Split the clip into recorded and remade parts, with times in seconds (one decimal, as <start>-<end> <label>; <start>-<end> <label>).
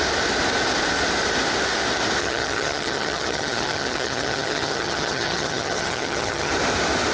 0.0-2.2 recorded; 2.2-6.5 remade; 6.5-7.1 recorded